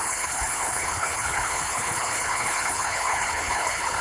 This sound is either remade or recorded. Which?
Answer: remade